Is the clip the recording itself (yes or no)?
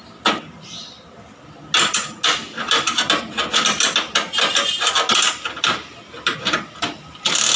yes